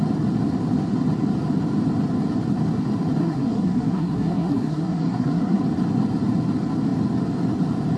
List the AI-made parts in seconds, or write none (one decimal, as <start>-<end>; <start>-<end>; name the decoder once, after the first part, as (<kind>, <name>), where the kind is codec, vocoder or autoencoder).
3.2-5.6 (codec, SNAC)